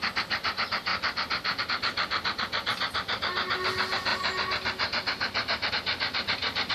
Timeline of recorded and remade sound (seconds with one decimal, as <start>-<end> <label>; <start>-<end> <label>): 0.0-6.7 recorded